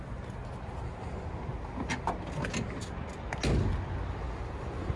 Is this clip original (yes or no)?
yes